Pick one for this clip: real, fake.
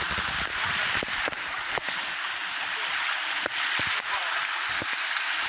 real